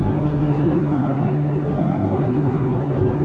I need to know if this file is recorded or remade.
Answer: remade